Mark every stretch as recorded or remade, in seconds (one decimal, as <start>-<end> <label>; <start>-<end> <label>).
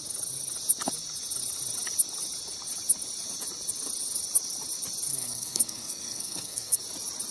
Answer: 0.0-5.1 recorded; 5.1-6.8 remade; 6.8-7.3 recorded